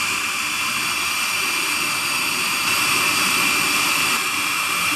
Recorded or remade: recorded